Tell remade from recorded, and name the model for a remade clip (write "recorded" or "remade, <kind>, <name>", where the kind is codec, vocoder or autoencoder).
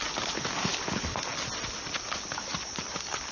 recorded